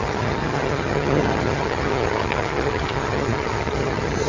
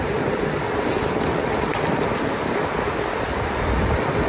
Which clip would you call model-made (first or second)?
first